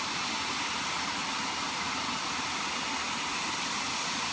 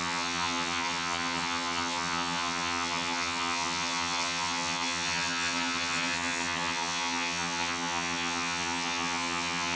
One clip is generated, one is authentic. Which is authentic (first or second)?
first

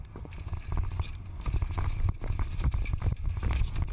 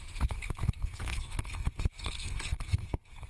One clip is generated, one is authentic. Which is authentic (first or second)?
first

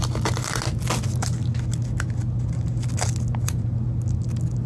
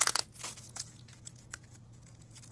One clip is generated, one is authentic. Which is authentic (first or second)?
first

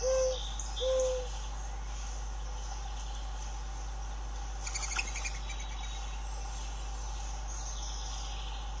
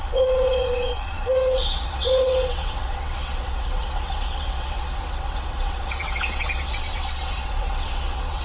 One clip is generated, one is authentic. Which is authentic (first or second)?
first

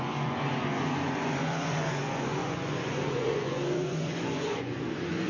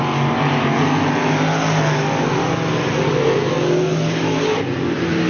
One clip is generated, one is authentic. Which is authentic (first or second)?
second